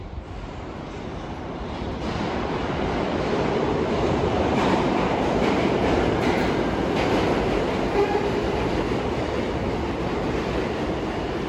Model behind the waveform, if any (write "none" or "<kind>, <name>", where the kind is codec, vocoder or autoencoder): vocoder, BigVGAN v2